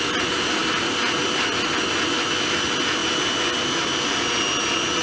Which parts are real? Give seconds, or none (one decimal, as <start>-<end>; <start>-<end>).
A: 0.0-5.0

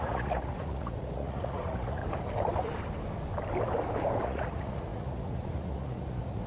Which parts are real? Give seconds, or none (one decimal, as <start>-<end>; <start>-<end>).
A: 2.0-4.2

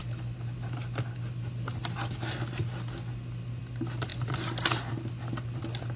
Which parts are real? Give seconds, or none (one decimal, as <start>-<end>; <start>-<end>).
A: 0.0-6.0